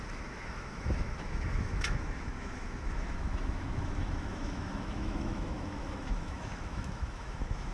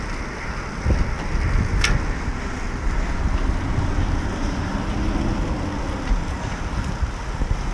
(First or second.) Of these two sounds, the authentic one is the second